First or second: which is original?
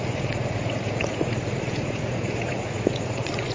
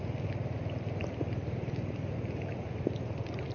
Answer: second